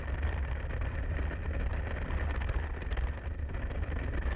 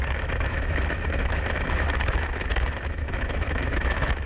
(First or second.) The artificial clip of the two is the second